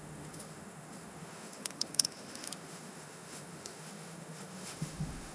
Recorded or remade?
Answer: remade